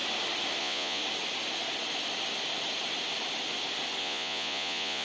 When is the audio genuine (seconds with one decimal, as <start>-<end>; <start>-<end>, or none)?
0.0-0.6; 1.0-4.0